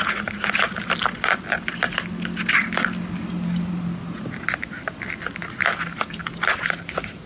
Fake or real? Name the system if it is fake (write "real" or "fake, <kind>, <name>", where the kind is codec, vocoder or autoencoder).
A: real